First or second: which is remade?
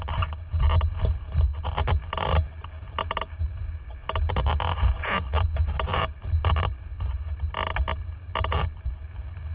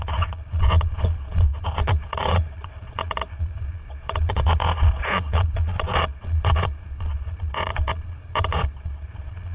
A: second